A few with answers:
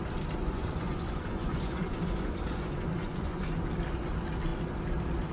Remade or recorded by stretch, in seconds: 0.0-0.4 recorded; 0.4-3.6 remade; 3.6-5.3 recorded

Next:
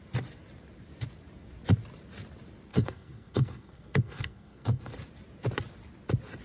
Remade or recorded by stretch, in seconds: 0.0-2.7 recorded; 2.7-4.9 remade; 4.9-6.4 recorded

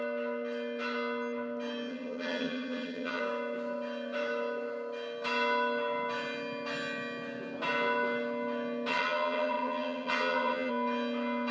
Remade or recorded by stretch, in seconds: 0.0-1.9 recorded; 1.9-3.2 remade; 3.2-8.9 recorded; 8.9-10.7 remade; 10.7-11.5 recorded

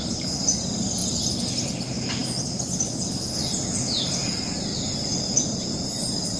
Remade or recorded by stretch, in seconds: 0.0-1.0 recorded; 1.0-1.7 remade; 1.7-4.7 recorded; 4.7-5.3 remade; 5.3-6.4 recorded

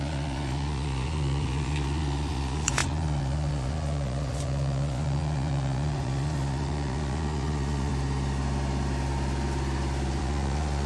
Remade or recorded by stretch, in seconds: 0.0-7.9 remade; 7.9-10.2 recorded; 10.2-10.9 remade